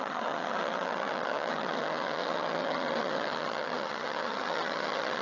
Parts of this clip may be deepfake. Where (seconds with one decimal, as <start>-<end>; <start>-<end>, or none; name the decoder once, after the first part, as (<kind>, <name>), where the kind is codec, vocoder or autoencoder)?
0.0-5.2 (vocoder, HiFi-GAN)